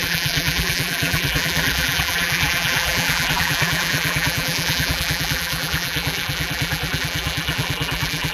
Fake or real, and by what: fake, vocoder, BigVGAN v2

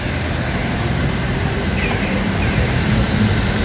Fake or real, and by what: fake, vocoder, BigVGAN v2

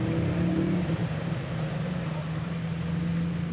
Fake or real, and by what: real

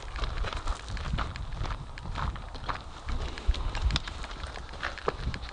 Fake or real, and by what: real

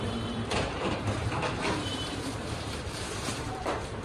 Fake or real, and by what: fake, vocoder, BigVGAN v2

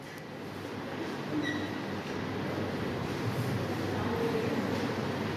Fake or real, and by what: real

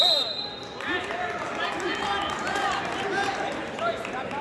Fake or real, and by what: fake, vocoder, BigVGAN v2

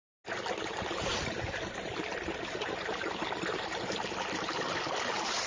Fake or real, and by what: real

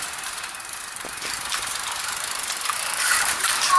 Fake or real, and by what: fake, vocoder, BigVGAN v2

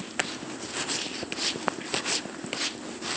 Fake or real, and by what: real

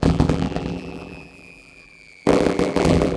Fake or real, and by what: fake, vocoder, BigVGAN v2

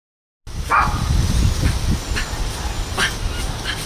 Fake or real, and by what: real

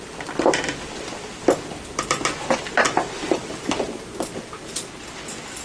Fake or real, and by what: real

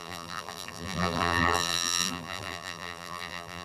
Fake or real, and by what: fake, vocoder, BigVGAN v2